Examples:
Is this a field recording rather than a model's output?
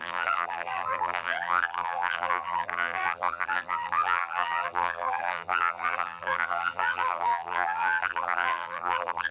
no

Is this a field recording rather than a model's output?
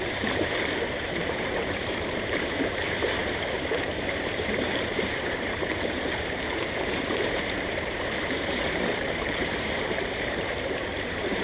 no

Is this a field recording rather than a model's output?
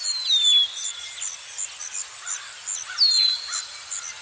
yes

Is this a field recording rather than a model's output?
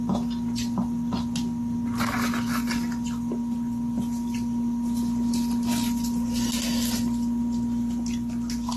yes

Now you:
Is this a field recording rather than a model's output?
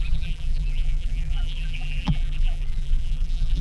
no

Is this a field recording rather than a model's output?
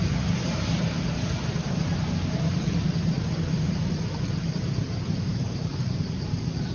no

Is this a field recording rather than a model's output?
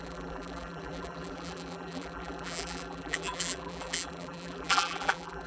no